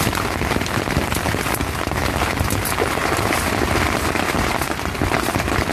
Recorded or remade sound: recorded